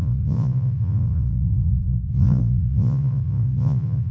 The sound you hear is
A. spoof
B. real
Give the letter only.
A